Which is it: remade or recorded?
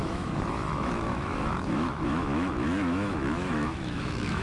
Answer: remade